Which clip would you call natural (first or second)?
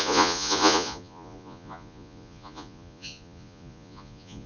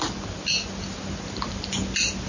second